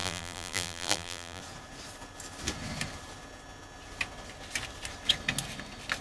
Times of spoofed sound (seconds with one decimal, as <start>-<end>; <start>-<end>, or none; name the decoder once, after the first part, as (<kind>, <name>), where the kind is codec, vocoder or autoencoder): 0.0-1.4 (vocoder, BigVGAN v2)